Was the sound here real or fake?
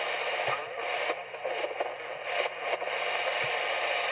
real